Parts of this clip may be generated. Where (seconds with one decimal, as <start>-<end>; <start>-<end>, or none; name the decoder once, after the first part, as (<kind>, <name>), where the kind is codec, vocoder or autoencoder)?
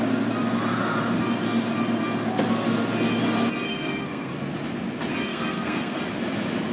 3.7-4.3 (codec, SNAC); 5.3-6.0